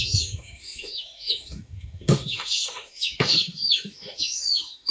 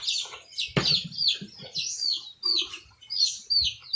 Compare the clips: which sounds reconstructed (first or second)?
first